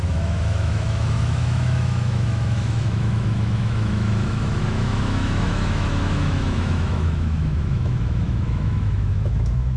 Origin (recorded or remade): remade